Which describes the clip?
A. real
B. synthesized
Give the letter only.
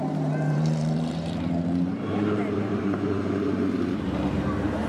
B